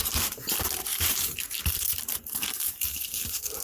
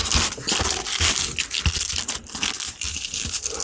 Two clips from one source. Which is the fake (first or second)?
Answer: first